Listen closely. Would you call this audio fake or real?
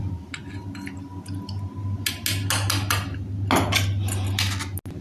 real